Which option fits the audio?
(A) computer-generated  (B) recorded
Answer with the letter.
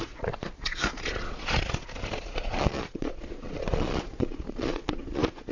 A